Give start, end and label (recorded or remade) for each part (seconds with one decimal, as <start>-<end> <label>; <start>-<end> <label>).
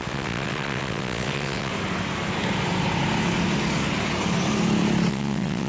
0.0-1.7 remade; 1.7-5.1 recorded; 5.1-5.7 remade